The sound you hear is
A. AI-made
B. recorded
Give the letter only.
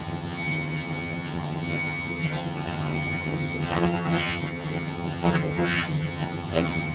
A